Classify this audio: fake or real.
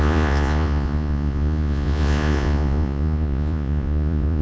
fake